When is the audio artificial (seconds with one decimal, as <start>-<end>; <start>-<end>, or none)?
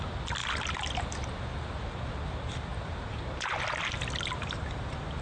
none